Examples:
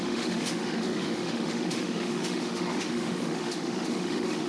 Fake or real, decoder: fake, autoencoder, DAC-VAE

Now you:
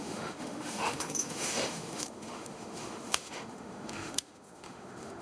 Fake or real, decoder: fake, autoencoder, DAC-VAE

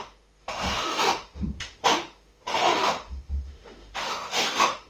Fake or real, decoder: fake, autoencoder, DAC-VAE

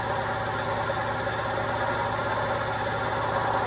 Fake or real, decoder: real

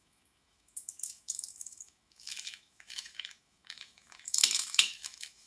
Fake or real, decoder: fake, autoencoder, DAC-VAE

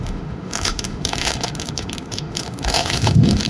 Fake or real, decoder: fake, autoencoder, DAC-VAE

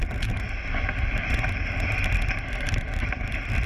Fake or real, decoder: real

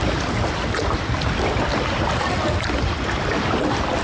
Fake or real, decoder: real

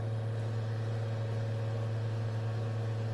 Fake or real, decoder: real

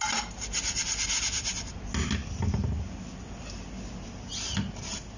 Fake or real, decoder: real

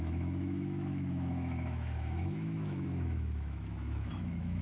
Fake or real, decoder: fake, autoencoder, DAC-VAE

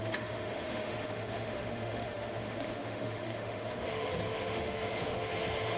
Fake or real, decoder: fake, autoencoder, DAC-VAE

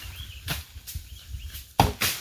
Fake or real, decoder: real